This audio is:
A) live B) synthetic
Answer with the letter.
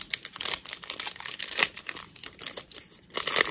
A